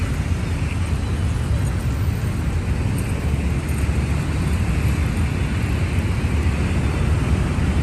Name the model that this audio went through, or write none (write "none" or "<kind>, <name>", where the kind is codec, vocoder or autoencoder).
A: none